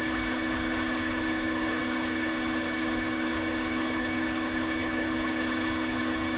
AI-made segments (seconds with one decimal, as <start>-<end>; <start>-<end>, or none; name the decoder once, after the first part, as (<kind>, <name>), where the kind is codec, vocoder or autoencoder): 0.0-6.4 (codec, HILCodec)